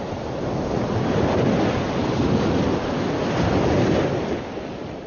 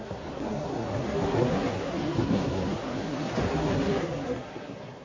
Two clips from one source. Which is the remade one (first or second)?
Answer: second